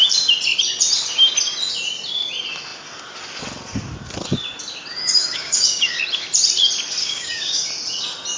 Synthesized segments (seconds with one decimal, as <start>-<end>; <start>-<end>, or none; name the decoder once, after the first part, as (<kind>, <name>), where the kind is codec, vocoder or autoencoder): 4.9-6.0 (codec, DAC); 7.0-7.7